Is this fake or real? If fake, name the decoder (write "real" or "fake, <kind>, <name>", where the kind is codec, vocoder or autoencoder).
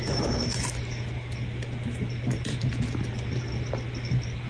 real